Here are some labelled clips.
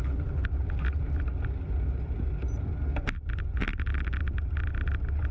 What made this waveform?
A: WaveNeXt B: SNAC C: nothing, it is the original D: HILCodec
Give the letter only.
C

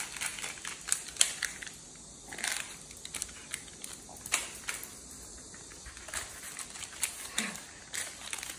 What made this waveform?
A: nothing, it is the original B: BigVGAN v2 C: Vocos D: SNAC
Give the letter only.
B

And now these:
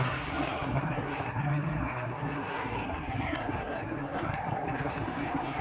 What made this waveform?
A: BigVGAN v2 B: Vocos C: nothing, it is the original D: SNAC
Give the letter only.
D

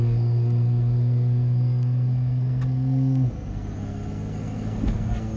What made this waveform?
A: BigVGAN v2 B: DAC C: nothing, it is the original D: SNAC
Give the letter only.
D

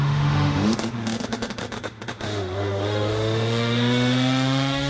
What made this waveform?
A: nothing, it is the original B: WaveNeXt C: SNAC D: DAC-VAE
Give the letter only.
D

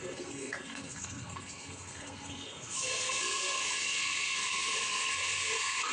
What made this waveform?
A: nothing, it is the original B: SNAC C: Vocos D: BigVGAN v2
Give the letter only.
B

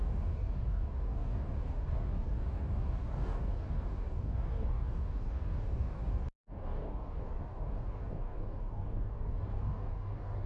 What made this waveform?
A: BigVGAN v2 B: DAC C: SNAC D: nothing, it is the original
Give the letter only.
B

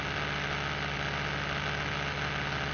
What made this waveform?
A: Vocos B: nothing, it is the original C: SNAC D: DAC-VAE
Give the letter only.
B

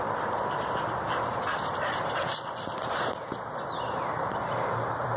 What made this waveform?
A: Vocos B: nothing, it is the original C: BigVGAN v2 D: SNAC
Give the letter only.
C